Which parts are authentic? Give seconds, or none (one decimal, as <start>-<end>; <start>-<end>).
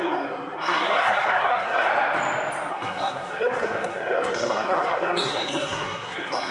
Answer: 1.9-2.7